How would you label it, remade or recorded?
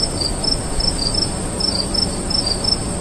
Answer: recorded